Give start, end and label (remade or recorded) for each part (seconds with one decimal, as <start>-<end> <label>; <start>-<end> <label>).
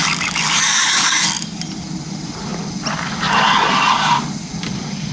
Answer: 0.0-1.6 remade; 1.6-5.1 recorded